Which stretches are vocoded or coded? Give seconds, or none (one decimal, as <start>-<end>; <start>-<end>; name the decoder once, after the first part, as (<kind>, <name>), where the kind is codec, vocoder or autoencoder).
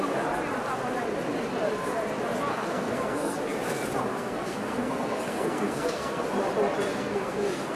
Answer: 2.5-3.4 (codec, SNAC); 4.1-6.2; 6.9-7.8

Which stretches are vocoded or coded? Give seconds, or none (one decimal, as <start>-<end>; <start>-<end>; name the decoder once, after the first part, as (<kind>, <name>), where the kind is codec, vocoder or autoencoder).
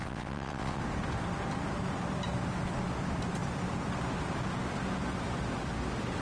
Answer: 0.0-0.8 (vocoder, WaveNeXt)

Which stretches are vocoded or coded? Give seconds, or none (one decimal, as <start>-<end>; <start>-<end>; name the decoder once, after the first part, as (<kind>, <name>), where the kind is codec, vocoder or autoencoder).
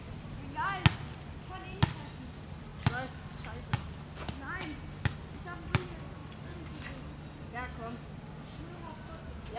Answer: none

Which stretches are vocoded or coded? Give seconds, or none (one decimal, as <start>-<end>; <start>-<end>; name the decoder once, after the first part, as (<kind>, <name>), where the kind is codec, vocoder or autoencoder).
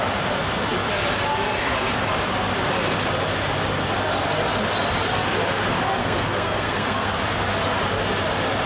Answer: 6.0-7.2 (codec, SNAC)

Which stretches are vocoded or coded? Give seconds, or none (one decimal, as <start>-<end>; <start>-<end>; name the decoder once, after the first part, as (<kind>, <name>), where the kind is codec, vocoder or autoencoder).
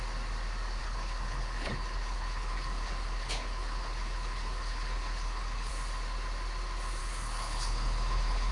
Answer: 0.8-5.7 (codec, HILCodec); 7.0-8.5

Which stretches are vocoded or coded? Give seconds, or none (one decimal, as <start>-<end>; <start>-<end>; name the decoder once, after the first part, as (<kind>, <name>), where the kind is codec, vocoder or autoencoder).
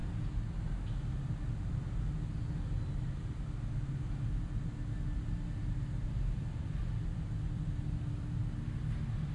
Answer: 6.0-8.4 (vocoder, BigVGAN v2)